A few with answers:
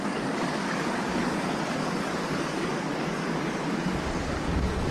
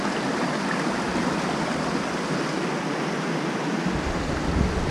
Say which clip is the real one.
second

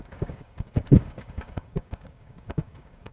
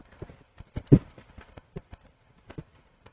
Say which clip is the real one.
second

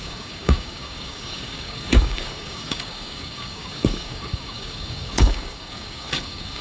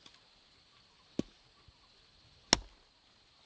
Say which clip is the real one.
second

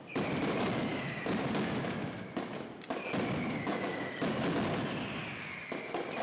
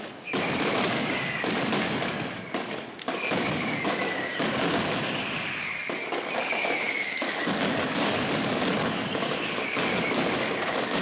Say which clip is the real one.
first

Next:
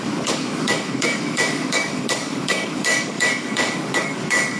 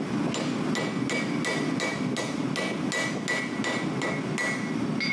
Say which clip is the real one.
second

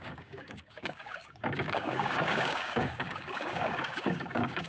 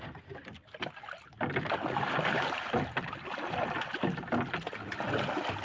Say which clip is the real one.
second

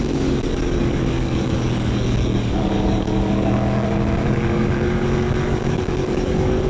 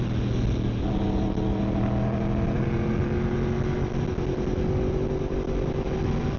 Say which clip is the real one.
second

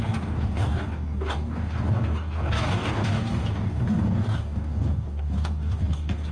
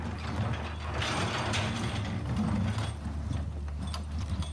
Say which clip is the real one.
second